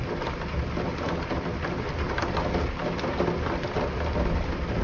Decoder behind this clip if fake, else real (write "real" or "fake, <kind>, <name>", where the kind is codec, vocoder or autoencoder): real